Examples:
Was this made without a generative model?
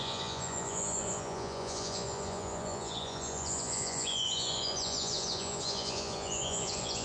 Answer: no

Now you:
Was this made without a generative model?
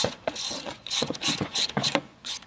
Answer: no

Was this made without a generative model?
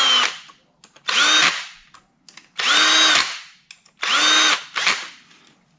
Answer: yes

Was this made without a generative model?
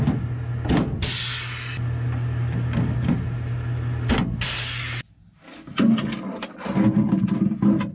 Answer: yes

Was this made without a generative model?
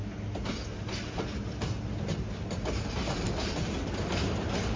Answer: yes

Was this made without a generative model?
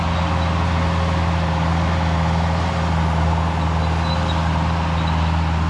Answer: yes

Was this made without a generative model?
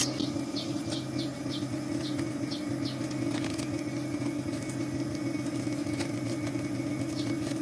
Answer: yes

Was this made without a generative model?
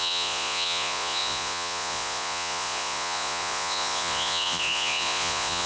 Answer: no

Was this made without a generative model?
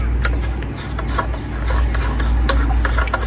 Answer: yes